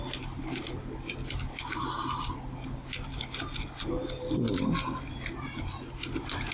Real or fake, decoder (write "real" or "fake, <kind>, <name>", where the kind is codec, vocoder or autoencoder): real